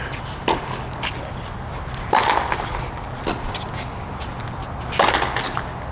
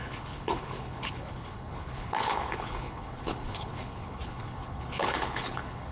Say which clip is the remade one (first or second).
second